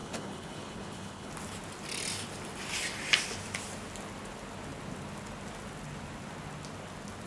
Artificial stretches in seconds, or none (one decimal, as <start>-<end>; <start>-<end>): 0.0-1.3